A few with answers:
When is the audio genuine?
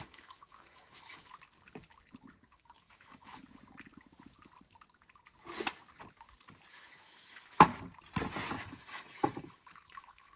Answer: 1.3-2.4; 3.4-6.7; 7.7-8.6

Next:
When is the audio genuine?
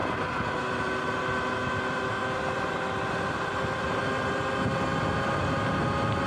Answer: 0.0-6.3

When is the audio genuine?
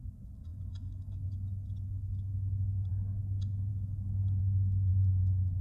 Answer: 0.0-0.5; 2.9-3.7; 4.4-5.6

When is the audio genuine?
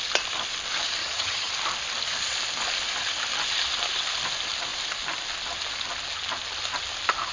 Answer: 0.0-1.0; 1.5-7.3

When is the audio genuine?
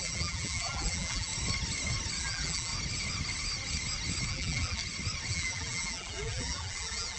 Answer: 1.3-2.2; 2.7-4.3; 4.8-5.3